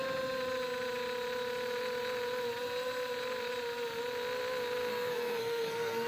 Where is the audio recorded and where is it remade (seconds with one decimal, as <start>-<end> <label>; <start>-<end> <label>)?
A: 0.0-4.9 recorded; 4.9-6.1 remade